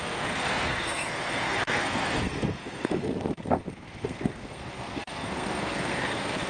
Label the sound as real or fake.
fake